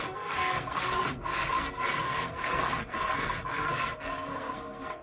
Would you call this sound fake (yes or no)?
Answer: yes